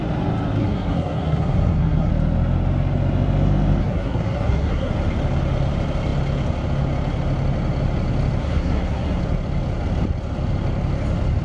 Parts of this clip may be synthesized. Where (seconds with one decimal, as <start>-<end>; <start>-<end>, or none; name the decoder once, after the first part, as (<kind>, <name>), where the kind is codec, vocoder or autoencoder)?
0.6-2.1 (codec, SNAC); 3.8-4.9; 8.4-9.2